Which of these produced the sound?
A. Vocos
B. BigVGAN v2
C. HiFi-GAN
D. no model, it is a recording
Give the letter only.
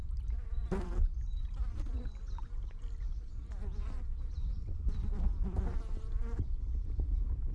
D